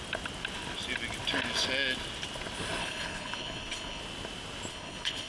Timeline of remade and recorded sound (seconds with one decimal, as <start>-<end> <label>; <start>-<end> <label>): 0.0-2.8 recorded; 2.8-4.0 remade; 4.0-4.7 recorded; 4.7-5.3 remade